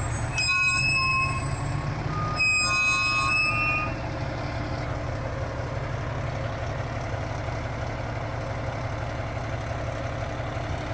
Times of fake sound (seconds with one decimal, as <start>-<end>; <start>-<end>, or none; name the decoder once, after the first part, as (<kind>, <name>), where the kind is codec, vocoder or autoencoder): none